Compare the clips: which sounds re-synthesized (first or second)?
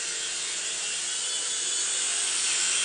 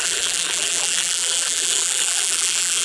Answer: second